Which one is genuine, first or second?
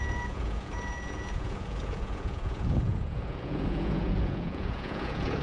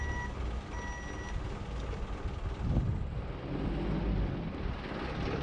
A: second